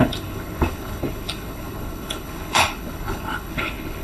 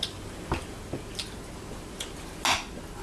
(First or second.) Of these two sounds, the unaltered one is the second